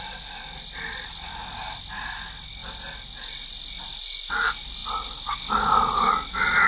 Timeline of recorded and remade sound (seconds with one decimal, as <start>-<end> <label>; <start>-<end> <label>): 0.0-6.7 recorded